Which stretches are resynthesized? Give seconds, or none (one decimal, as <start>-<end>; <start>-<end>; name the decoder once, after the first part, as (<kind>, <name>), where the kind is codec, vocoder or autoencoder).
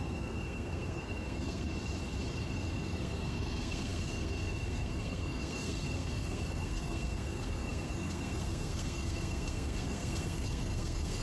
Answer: 0.0-1.7 (codec, SNAC); 2.5-11.2